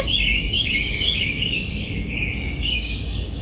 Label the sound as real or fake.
fake